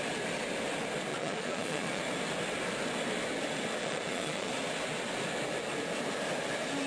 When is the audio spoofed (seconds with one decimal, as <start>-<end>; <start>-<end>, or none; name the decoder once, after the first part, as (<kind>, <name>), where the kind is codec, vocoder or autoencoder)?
1.1-2.0 (vocoder, Vocos); 3.8-4.5